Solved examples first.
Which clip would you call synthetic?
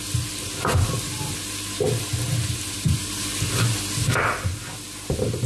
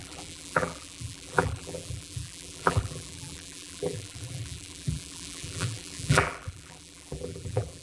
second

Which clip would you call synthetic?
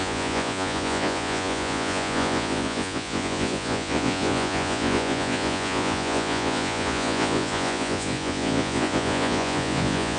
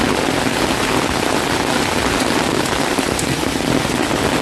first